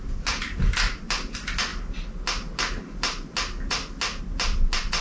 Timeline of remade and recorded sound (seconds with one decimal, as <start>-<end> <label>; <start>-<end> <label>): 0.0-5.0 recorded